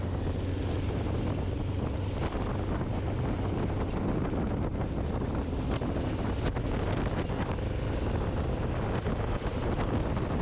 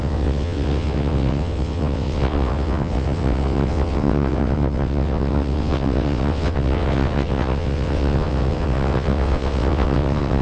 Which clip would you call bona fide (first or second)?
first